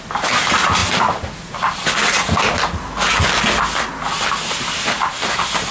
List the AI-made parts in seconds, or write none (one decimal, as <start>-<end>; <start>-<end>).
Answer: none